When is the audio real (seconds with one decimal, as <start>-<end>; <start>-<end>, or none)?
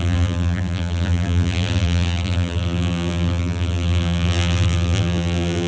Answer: none